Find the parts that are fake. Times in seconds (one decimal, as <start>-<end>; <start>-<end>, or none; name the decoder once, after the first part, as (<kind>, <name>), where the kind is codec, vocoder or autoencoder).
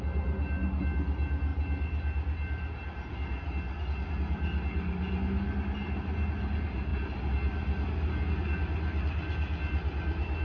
none